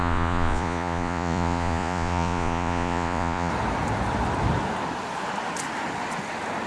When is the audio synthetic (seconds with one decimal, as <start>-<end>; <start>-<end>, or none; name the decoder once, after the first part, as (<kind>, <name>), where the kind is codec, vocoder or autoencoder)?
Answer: 0.0-3.5 (vocoder, Vocos)